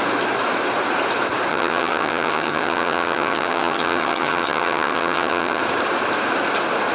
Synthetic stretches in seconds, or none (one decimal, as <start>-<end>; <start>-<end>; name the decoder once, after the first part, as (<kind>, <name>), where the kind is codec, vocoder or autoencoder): 1.5-5.6 (vocoder, HiFi-GAN)